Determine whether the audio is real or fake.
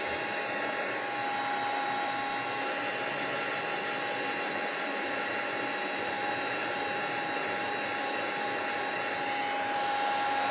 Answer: real